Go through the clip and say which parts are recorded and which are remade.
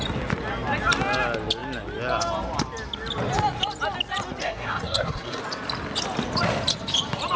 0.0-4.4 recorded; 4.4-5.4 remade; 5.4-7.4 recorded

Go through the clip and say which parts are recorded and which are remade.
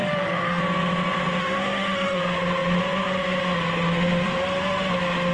0.0-0.6 remade; 0.6-1.4 recorded; 1.4-2.2 remade; 2.2-5.3 recorded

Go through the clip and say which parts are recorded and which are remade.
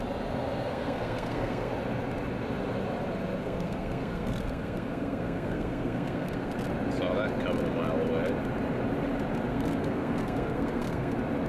0.0-0.7 recorded; 0.7-1.7 remade; 1.7-3.4 recorded; 3.4-6.5 remade; 6.5-9.5 recorded; 9.5-11.1 remade; 11.1-11.5 recorded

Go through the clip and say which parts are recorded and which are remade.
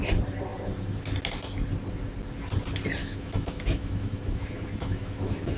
0.0-3.0 recorded; 3.0-5.6 remade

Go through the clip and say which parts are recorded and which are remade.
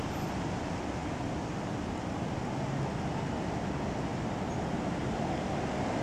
0.0-6.0 recorded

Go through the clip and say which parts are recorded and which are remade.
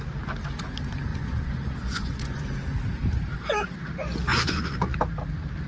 0.0-1.1 recorded; 1.1-2.5 remade; 2.5-4.3 recorded; 4.3-5.0 remade; 5.0-5.7 recorded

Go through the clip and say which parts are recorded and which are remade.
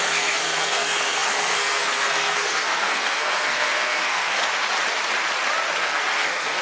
0.0-4.4 remade; 4.4-5.8 recorded; 5.8-6.6 remade